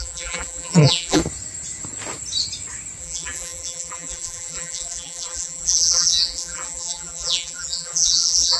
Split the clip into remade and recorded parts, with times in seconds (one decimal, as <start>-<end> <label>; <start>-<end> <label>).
0.0-1.2 remade; 1.2-3.0 recorded; 3.0-8.6 remade